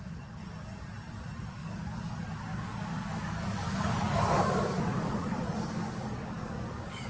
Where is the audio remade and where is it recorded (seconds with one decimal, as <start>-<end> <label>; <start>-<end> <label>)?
0.0-1.6 recorded; 1.6-2.1 remade; 2.1-2.5 recorded; 2.5-7.1 remade

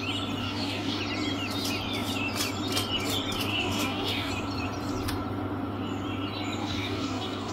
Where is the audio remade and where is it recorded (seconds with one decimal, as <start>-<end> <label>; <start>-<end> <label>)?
0.0-0.4 recorded; 0.4-1.0 remade; 1.0-3.5 recorded; 3.5-4.3 remade; 4.3-6.6 recorded; 6.6-7.5 remade

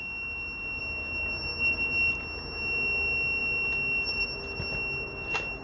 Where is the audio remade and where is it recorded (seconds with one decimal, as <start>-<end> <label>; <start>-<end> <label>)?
0.0-5.6 recorded